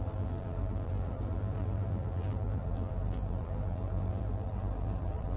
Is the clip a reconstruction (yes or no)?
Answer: yes